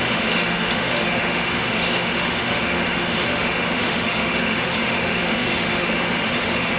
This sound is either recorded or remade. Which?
remade